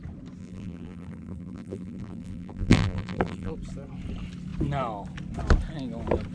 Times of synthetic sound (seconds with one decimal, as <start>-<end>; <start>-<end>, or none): 0.4-3.5